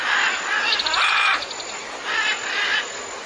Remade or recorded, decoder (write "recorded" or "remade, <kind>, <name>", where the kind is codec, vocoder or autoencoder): recorded